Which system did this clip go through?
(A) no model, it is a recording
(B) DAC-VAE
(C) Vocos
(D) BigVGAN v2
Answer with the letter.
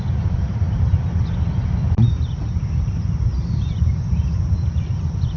A